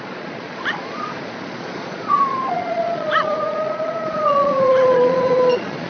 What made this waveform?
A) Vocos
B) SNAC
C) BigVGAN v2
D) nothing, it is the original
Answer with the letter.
A